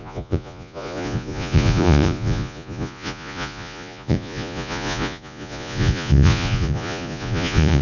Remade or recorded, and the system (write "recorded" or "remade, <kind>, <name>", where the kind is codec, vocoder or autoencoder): remade, vocoder, Vocos